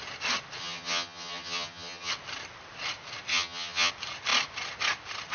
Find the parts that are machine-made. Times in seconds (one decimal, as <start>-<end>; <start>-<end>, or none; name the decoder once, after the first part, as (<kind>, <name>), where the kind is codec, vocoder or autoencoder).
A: 0.6-2.1 (vocoder, HiFi-GAN); 3.3-3.9